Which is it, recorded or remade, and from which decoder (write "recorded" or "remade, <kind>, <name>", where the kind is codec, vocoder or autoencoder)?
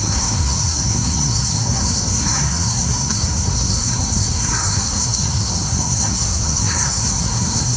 remade, codec, SNAC